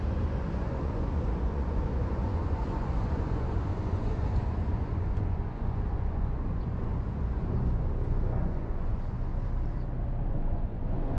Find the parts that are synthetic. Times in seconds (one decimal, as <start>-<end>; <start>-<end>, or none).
0.0-9.3; 10.3-11.2